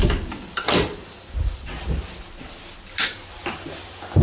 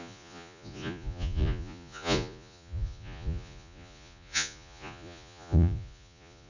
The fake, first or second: second